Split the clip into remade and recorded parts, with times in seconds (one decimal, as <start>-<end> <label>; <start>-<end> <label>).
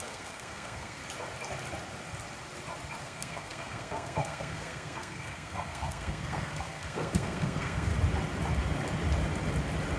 0.0-1.0 remade; 1.0-3.0 recorded; 3.0-7.9 remade; 7.9-10.0 recorded